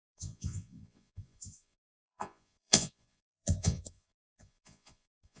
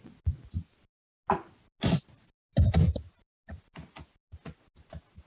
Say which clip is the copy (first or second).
first